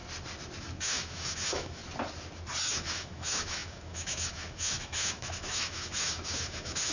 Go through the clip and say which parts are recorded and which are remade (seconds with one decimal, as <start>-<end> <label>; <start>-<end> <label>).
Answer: 0.0-0.6 recorded; 0.6-1.8 remade; 1.8-2.7 recorded; 2.7-6.9 remade